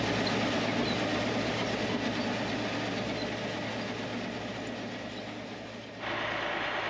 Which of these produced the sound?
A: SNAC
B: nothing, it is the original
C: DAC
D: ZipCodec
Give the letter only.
B